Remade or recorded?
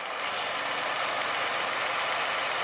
recorded